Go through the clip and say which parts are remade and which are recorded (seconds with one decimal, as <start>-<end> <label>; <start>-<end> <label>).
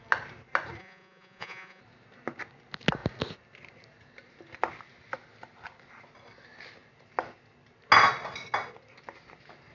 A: 0.0-0.8 recorded; 0.8-1.8 remade; 1.8-9.7 recorded